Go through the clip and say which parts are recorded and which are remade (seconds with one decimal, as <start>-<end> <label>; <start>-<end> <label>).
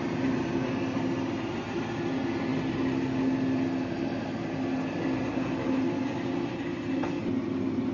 0.0-7.9 recorded